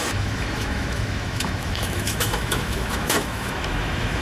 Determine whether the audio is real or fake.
fake